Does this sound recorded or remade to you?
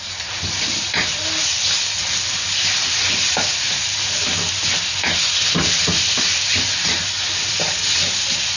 recorded